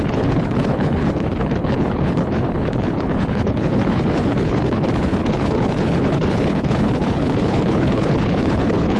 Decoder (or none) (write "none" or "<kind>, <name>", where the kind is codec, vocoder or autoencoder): codec, HILCodec